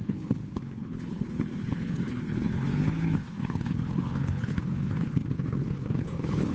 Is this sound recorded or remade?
remade